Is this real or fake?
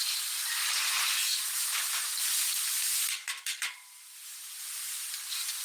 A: real